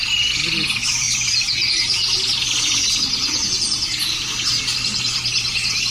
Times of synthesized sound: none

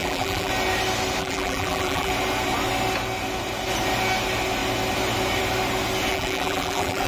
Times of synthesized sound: 0.0-0.5 (vocoder, BigVGAN v2); 1.2-2.1; 6.1-7.1

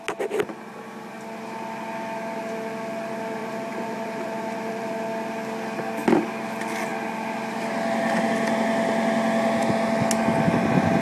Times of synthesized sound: 3.4-4.9 (vocoder, BigVGAN v2)

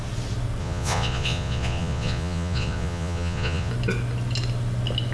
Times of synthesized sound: 0.6-3.7 (vocoder, Vocos)